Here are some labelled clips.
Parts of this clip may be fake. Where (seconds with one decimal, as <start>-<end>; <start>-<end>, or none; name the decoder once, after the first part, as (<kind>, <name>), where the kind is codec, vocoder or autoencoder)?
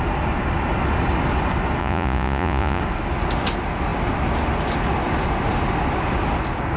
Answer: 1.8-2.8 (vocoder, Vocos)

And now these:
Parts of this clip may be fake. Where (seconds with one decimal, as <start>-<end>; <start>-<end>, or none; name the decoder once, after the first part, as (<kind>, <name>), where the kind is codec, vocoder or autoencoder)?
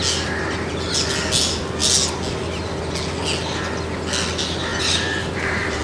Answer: 4.7-5.8 (vocoder, BigVGAN v2)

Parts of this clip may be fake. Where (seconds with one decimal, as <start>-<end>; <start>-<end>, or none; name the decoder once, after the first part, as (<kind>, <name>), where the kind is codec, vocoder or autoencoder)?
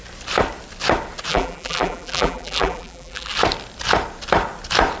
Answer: 1.3-3.3 (vocoder, BigVGAN v2)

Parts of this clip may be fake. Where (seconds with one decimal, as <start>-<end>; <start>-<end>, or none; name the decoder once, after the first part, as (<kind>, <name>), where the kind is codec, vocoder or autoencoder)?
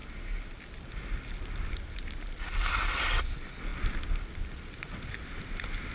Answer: none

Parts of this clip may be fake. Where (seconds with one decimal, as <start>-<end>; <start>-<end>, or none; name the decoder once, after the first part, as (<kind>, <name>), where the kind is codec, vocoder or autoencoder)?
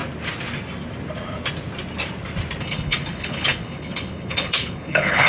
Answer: 2.6-5.3 (codec, HILCodec)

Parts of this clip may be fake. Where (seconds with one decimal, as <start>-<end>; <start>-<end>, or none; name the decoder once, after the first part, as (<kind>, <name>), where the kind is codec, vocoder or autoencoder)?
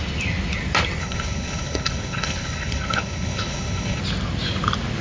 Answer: 1.0-4.0 (codec, HILCodec)